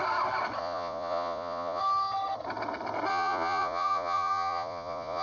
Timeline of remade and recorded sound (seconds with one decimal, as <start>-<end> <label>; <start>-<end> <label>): 0.0-0.6 recorded; 0.6-1.8 remade; 1.8-3.1 recorded; 3.1-5.2 remade